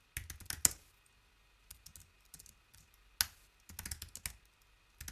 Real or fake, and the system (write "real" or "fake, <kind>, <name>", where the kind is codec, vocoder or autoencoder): real